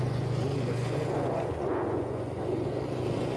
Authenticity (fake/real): fake